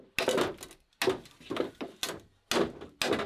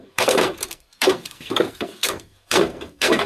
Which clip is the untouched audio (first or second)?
first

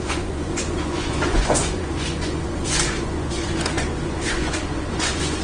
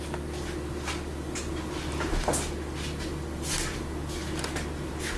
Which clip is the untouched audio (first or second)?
second